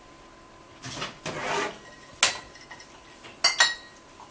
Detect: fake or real real